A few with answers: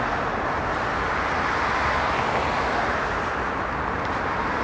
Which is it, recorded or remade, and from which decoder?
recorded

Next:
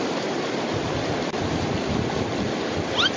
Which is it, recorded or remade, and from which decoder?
recorded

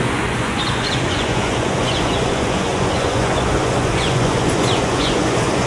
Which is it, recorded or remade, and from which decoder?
remade, vocoder, Vocos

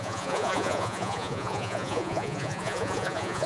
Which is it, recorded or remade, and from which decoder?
remade, vocoder, Vocos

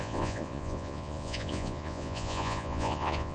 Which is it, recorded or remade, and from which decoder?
remade, vocoder, Vocos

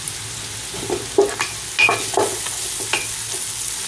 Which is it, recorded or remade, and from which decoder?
recorded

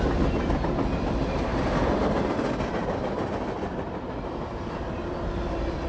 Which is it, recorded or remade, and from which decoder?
recorded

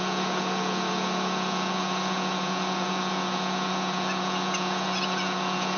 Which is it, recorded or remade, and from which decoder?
remade, vocoder, Vocos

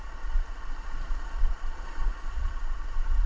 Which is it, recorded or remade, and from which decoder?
remade, vocoder, Vocos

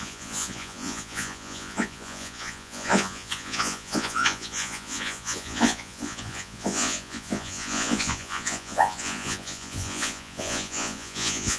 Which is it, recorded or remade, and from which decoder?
remade, vocoder, Vocos